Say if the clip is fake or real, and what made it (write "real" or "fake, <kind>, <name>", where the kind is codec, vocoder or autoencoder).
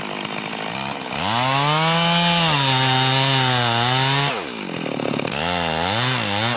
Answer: real